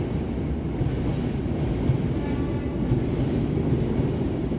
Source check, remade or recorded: recorded